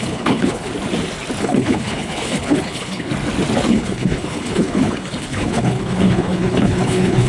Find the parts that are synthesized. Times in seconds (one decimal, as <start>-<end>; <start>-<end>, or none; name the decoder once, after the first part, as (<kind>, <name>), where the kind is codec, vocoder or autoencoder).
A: 0.0-0.7 (codec, HILCodec); 1.4-3.1; 3.7-7.3